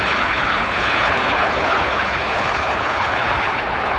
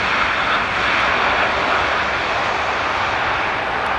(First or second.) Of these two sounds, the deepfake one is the first